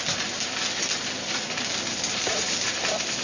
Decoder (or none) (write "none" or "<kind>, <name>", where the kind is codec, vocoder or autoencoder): none